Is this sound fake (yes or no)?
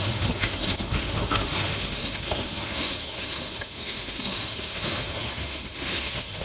yes